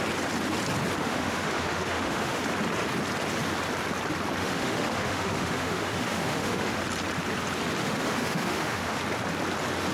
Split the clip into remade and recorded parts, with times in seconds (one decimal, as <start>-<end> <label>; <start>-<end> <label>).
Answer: 0.0-1.0 recorded; 1.0-2.4 remade; 2.4-4.4 recorded; 4.4-6.8 remade; 6.8-7.8 recorded; 7.8-9.0 remade; 9.0-9.9 recorded

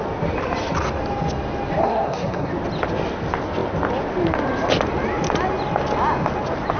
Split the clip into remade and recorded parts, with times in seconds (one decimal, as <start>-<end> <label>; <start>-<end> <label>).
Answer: 0.0-1.8 recorded; 1.8-2.5 remade; 2.5-6.8 recorded